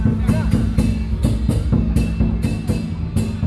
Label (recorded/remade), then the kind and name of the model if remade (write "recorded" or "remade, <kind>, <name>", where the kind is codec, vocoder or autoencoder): recorded